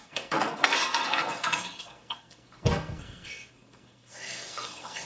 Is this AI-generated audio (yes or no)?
yes